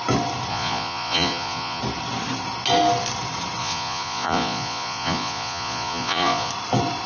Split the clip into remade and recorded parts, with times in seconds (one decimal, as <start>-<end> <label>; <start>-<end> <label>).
0.0-0.5 recorded; 0.5-1.8 remade; 1.8-3.6 recorded; 3.6-6.5 remade; 6.5-7.1 recorded